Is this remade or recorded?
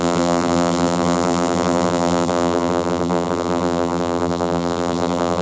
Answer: remade